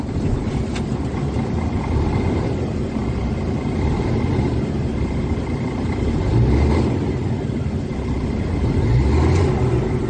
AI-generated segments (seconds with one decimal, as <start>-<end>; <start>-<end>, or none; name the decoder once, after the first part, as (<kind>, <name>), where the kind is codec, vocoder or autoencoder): none